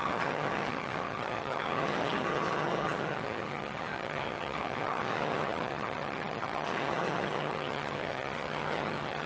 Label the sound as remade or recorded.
remade